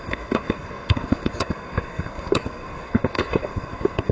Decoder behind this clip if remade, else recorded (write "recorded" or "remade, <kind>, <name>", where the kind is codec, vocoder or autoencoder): remade, codec, SNAC